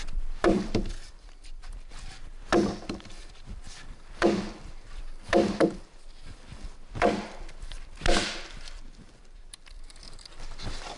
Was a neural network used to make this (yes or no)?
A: yes